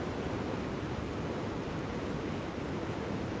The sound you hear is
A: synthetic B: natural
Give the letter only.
B